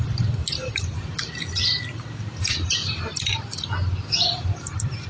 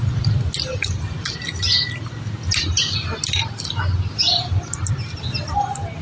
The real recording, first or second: second